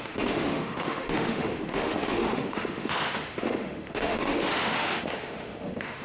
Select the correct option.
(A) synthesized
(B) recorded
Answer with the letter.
A